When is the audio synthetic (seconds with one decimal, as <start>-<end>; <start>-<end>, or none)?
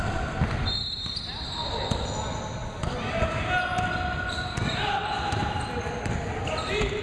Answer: none